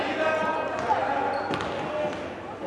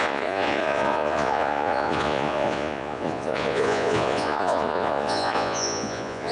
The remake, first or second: second